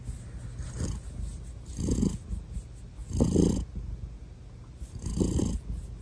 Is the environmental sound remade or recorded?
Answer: recorded